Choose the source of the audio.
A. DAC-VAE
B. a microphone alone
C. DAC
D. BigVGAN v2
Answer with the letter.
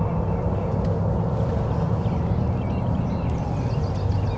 B